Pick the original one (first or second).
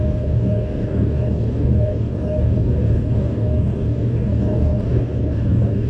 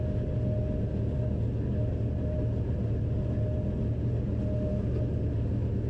second